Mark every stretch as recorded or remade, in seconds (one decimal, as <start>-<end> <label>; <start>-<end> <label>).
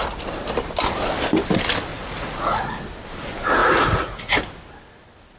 0.0-1.9 recorded; 1.9-2.8 remade; 2.8-3.6 recorded; 3.6-4.4 remade; 4.4-5.4 recorded